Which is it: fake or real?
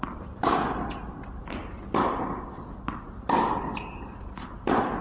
real